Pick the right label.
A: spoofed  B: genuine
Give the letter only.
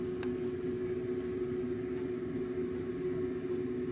B